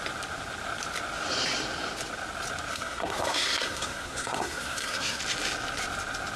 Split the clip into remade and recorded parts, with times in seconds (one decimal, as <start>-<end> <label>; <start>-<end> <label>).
0.0-2.7 recorded; 2.7-5.2 remade; 5.2-6.4 recorded